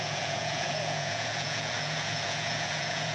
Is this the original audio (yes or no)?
no